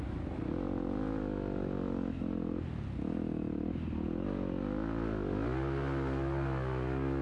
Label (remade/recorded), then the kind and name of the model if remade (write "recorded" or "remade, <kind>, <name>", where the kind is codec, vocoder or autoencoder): recorded